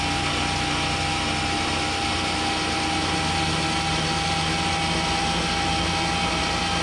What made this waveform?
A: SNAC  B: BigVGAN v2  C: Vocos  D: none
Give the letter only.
D